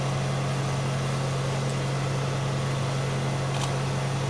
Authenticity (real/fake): real